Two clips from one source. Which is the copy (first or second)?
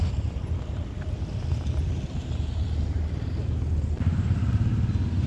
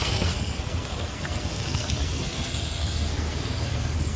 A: second